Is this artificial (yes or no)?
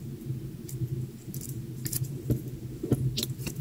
no